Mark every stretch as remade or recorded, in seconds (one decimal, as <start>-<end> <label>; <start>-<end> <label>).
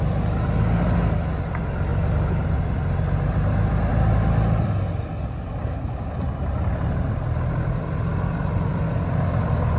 0.0-9.8 recorded